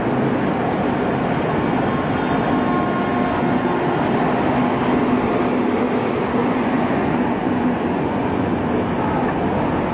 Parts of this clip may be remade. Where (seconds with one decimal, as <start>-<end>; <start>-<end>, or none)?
6.4-8.6